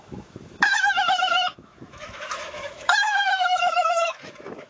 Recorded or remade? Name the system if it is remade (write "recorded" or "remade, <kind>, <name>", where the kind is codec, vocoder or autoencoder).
remade, autoencoder, DAC-VAE